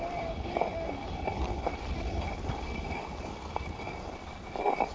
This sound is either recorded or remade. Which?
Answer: recorded